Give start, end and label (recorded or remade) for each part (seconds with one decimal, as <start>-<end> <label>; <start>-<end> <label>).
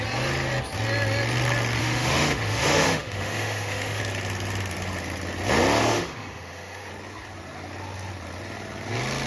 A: 0.0-1.8 recorded; 1.8-4.0 remade; 4.0-5.8 recorded; 5.8-6.9 remade; 6.9-9.3 recorded